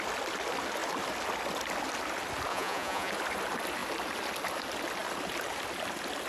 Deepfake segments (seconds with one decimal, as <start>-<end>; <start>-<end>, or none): 2.5-3.1